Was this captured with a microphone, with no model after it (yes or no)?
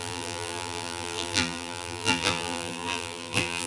no